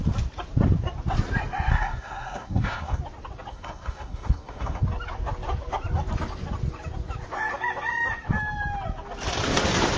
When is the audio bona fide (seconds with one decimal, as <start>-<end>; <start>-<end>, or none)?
0.0-1.7; 3.0-3.5; 4.8-10.0